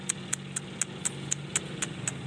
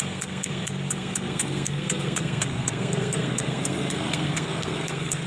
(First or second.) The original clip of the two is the first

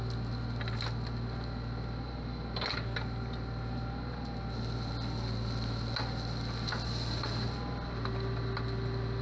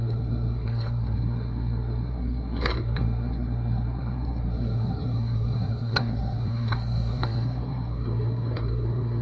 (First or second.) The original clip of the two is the first